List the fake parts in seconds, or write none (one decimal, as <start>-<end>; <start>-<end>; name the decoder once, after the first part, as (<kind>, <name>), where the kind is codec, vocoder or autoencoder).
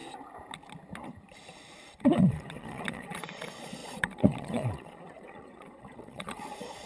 2.0-6.9 (vocoder, Vocos)